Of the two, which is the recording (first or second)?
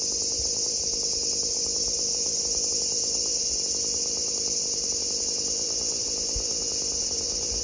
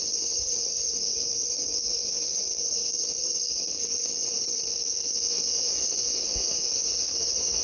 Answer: first